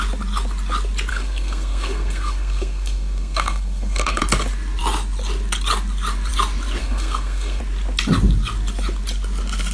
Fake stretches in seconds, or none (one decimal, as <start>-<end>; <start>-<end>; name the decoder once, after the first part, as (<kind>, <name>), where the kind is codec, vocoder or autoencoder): 1.1-4.2 (codec, SNAC); 6.8-7.6